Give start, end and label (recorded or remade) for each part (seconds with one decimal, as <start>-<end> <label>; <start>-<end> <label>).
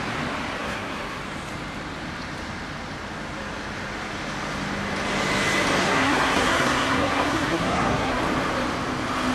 0.0-0.6 recorded; 0.6-1.2 remade; 1.2-5.8 recorded; 5.8-8.2 remade; 8.2-9.3 recorded